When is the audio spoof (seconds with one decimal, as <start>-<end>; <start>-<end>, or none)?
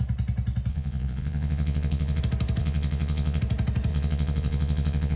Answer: 0.7-2.2; 2.6-3.4; 3.9-5.2